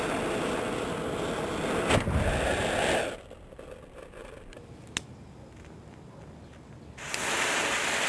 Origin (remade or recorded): recorded